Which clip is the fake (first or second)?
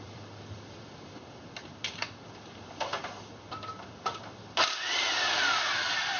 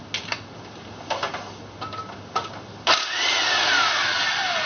first